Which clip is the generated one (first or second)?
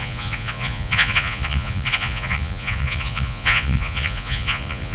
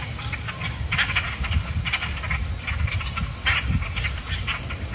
first